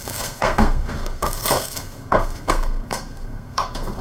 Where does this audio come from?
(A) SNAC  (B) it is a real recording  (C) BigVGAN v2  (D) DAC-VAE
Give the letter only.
A